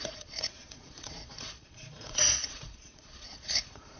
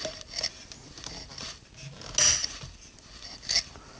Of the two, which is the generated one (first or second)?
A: first